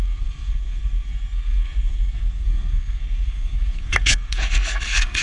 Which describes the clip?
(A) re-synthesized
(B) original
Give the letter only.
A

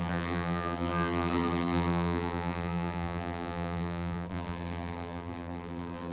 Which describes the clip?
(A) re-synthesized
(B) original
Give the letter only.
A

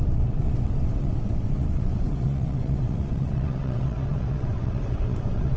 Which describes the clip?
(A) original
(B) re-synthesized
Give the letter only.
B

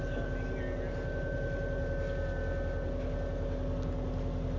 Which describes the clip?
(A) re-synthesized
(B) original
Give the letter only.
B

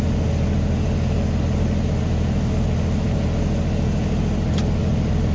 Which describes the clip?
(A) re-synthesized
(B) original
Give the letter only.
B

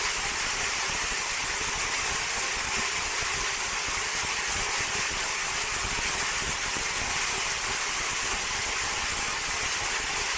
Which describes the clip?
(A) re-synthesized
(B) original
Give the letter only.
B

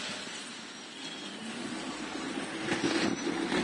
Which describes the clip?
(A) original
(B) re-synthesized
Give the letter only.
A